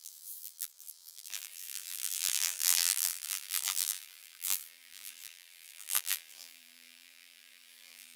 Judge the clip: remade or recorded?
remade